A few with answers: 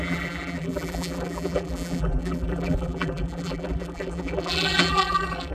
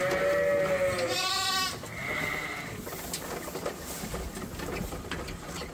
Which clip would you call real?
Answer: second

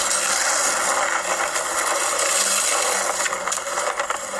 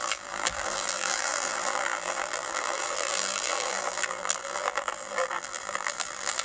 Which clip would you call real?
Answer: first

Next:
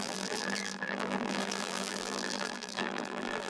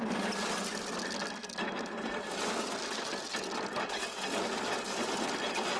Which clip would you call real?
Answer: second